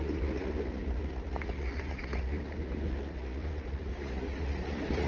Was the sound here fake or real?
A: fake